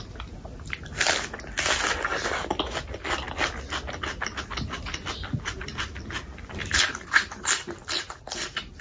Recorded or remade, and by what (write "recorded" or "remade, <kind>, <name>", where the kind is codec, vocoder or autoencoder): recorded